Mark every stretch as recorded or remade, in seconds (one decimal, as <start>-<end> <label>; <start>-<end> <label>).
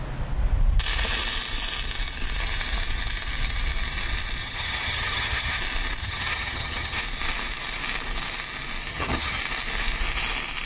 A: 0.0-4.4 recorded; 4.4-5.6 remade; 5.6-6.0 recorded; 6.0-7.0 remade; 7.0-8.9 recorded; 8.9-9.4 remade; 9.4-10.7 recorded